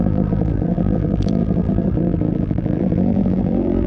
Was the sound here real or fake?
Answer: fake